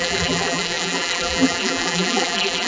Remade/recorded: remade